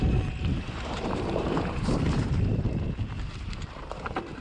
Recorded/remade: remade